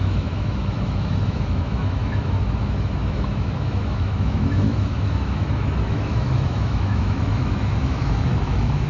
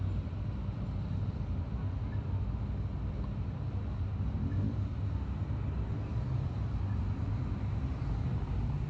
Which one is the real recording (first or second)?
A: second